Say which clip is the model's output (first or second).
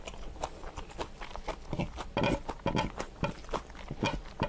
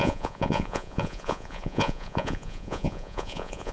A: second